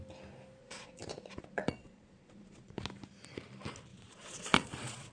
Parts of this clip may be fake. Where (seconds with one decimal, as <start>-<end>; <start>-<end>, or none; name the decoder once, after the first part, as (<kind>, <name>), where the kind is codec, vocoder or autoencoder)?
0.6-2.8 (vocoder, Vocos); 3.9-5.1